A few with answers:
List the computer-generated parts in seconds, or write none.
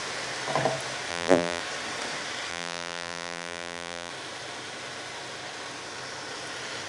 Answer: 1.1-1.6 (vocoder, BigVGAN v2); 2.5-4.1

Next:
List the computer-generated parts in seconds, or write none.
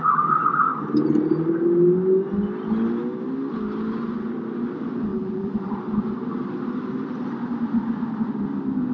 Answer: 5.1-5.7 (vocoder, BigVGAN v2)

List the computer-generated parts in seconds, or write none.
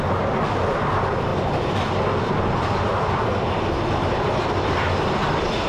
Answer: none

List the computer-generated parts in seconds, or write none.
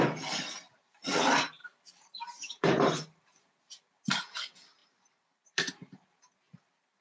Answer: 1.6-3.6 (vocoder, BigVGAN v2); 4.8-6.2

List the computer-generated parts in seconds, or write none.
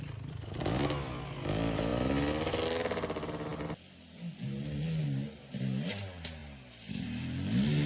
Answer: none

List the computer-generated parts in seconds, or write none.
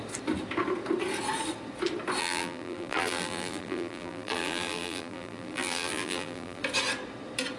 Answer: 2.2-6.6 (vocoder, BigVGAN v2)